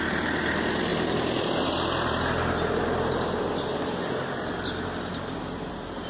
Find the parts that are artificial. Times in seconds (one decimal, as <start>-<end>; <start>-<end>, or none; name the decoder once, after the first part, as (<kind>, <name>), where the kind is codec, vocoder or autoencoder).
none